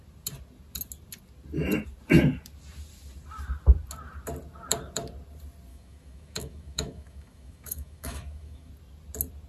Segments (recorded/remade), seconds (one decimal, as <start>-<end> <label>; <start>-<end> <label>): 0.0-5.7 recorded; 5.7-8.7 remade; 8.7-9.5 recorded